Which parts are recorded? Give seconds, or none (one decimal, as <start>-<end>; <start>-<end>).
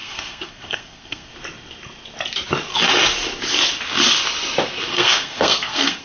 1.3-4.9